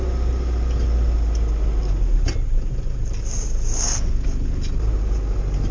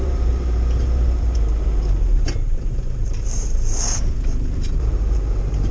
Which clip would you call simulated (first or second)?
second